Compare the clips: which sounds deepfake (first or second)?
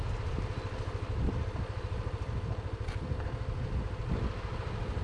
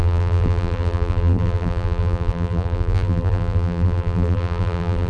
second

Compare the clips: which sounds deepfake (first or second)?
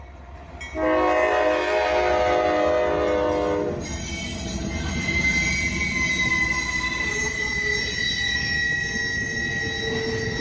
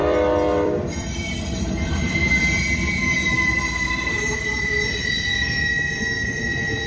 second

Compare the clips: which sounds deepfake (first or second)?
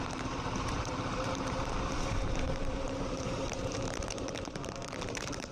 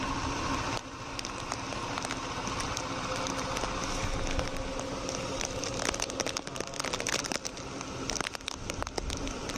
first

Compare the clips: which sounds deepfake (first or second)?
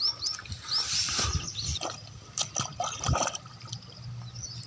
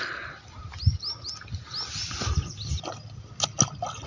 first